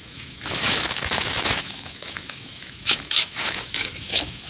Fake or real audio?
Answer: fake